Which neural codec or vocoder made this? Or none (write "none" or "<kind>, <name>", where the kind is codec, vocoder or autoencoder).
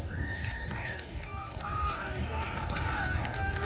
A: codec, DAC